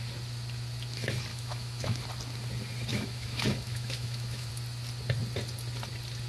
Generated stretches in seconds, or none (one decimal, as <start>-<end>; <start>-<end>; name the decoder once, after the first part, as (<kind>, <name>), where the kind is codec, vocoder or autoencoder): 1.3-2.0 (autoencoder, DAC-VAE); 2.9-4.5